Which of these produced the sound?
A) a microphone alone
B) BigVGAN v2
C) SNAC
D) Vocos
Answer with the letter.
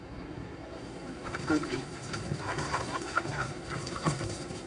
C